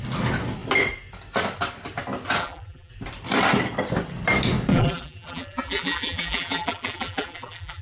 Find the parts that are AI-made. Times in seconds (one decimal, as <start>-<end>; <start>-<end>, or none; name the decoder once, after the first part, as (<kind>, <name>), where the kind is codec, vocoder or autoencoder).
2.4-2.9 (vocoder, BigVGAN v2); 4.7-7.8